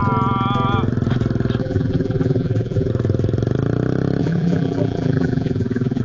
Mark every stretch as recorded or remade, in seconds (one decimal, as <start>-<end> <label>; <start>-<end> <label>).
0.0-1.6 recorded; 1.6-2.9 remade; 2.9-4.2 recorded; 4.2-6.0 remade